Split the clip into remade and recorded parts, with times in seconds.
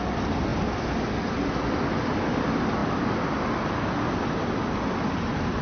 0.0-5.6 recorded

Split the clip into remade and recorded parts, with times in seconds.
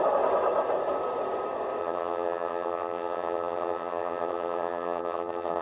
0.0-1.8 recorded; 1.8-5.6 remade